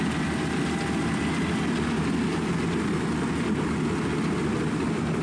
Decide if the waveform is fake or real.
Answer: real